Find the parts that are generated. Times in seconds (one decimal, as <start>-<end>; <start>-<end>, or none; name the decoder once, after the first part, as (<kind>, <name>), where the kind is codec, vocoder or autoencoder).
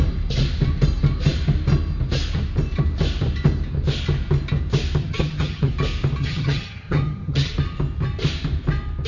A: 5.0-5.7 (vocoder, HiFi-GAN); 6.2-7.5